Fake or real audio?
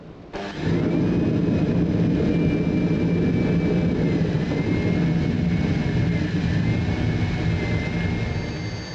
real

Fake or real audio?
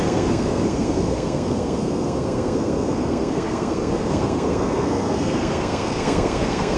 fake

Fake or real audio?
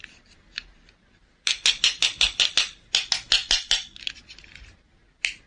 real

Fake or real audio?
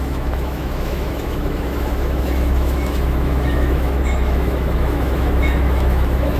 fake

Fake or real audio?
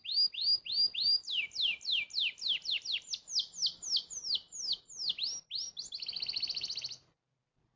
real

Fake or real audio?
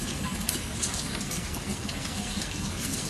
fake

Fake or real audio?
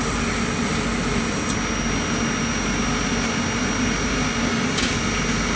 real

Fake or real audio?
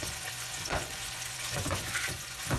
fake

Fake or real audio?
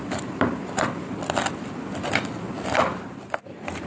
fake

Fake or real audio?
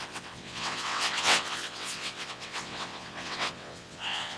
fake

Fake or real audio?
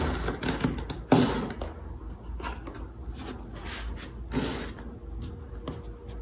real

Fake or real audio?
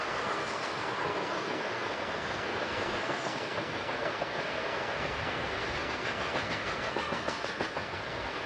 fake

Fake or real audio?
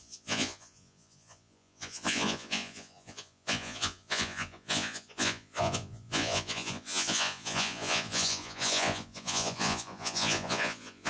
fake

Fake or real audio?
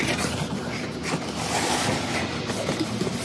real